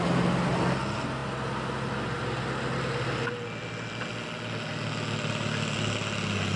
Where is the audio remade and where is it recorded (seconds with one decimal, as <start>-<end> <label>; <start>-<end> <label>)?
0.0-6.6 recorded